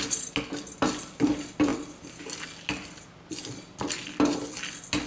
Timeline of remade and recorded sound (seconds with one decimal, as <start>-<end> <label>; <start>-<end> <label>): 0.0-5.1 recorded